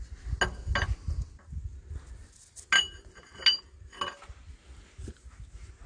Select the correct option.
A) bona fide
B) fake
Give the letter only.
A